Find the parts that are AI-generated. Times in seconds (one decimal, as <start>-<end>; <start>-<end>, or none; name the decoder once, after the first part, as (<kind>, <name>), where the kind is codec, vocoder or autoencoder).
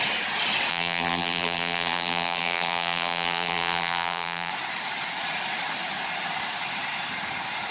0.7-4.5 (vocoder, BigVGAN v2)